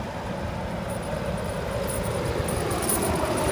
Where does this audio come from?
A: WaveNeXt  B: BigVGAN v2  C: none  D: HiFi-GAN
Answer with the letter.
C